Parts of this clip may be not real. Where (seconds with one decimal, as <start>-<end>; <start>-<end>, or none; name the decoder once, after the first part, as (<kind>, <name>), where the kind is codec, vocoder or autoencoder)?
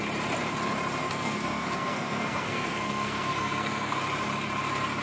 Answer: 1.0-4.0 (codec, SNAC)